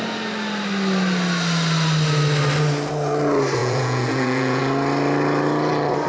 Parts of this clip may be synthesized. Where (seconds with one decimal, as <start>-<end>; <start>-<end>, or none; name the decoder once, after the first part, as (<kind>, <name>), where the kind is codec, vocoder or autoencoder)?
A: 3.6-4.6 (vocoder, Vocos)